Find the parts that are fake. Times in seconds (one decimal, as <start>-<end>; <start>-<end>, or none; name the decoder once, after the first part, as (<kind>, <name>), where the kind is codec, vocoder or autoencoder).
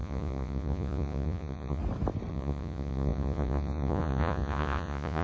0.0-1.8 (vocoder, Vocos); 2.3-5.2